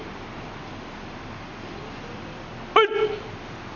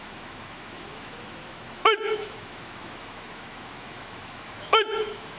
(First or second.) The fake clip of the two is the second